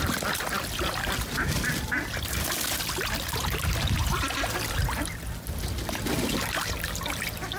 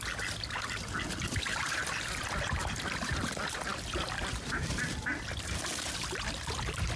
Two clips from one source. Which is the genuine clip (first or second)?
first